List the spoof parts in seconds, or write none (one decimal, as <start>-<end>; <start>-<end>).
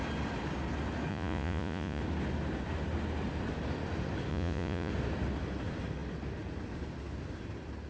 1.1-2.0; 4.3-4.9